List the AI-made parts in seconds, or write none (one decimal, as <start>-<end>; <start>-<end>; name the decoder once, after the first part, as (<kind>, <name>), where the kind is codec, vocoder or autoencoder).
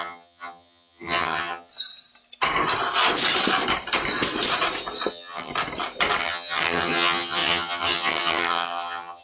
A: 0.0-1.7 (vocoder, HiFi-GAN); 5.1-5.5; 6.2-9.2